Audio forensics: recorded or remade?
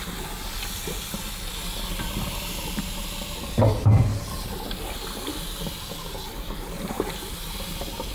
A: recorded